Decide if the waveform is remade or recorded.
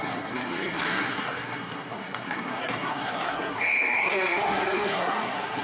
remade